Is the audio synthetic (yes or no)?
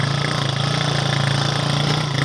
no